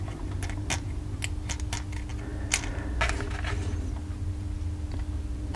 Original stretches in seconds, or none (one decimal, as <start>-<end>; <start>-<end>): 0.0-5.6